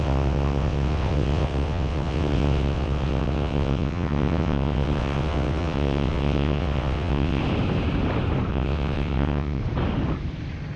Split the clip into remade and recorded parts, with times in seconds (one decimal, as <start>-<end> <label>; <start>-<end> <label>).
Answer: 0.0-7.4 remade; 7.4-8.5 recorded; 8.5-9.6 remade; 9.6-10.8 recorded